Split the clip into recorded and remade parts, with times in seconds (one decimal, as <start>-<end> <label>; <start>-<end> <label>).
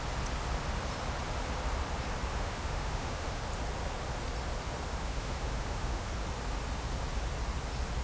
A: 0.0-2.3 recorded; 2.3-3.4 remade; 3.4-4.9 recorded; 4.9-6.1 remade; 6.1-8.0 recorded